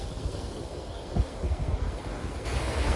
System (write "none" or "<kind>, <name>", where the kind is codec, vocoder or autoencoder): codec, SNAC